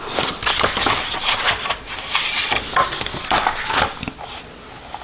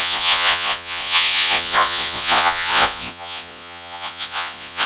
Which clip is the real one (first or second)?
first